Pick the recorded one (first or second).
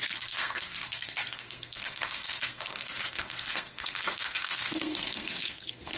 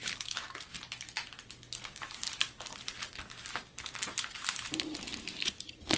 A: second